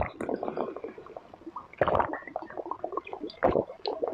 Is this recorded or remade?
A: recorded